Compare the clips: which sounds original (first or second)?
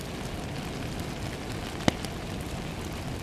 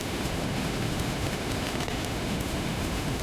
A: first